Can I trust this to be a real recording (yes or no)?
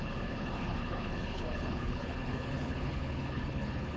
no